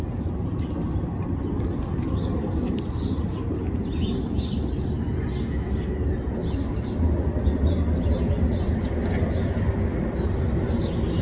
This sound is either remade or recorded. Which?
recorded